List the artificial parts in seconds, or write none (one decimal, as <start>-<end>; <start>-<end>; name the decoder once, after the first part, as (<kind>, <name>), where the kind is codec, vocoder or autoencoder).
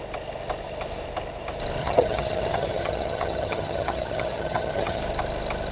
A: 1.8-5.0 (vocoder, HiFi-GAN)